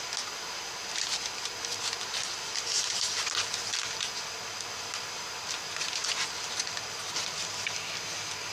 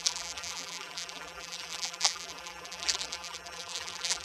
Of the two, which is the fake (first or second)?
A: second